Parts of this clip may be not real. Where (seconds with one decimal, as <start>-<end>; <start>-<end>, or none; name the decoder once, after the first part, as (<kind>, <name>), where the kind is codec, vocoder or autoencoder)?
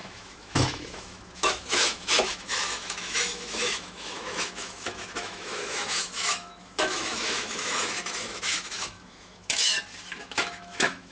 0.0-9.7 (autoencoder, DAC-VAE); 10.2-11.1